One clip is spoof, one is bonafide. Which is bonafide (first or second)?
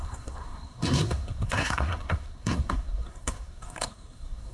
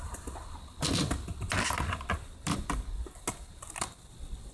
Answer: second